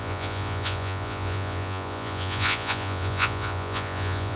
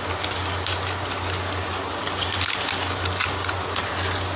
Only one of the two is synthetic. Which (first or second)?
first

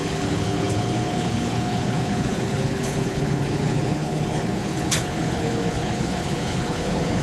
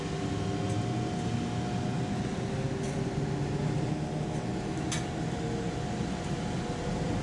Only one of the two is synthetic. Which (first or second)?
first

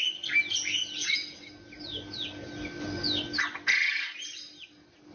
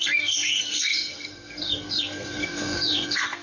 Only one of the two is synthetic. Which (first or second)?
second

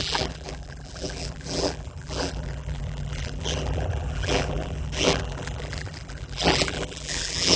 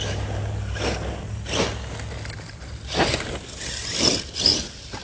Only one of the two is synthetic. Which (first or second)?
first